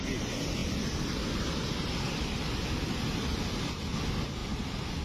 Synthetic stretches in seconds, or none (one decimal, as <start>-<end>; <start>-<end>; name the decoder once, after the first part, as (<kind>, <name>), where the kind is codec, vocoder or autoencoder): 0.6-3.6 (vocoder, BigVGAN v2); 4.4-5.0